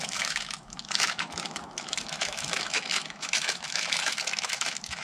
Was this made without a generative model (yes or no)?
no